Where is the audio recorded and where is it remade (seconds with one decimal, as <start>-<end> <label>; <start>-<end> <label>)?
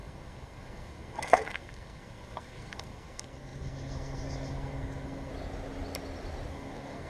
0.0-5.3 remade; 5.3-6.5 recorded; 6.5-7.1 remade